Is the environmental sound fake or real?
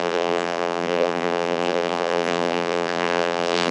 fake